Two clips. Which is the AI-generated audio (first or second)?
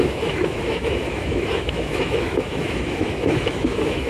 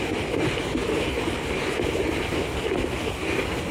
first